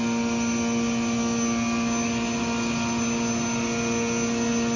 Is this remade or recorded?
recorded